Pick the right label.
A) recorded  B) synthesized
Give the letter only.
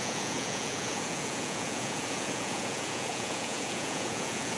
B